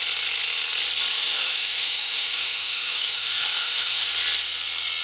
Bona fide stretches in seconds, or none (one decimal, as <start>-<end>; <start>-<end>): 0.0-1.1; 4.1-5.0